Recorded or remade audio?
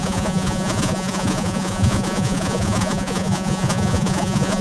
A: remade